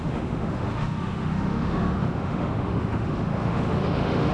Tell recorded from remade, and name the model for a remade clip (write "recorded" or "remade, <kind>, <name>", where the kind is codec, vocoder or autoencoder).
remade, autoencoder, DAC-VAE